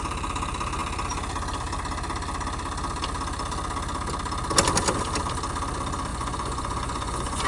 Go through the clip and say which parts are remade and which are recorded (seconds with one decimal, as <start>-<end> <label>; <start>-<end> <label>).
0.0-6.1 recorded; 6.1-7.5 remade